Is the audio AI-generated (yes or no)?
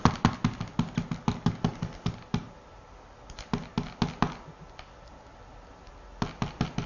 no